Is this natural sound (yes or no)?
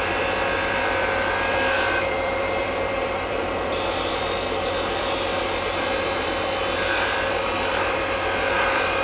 no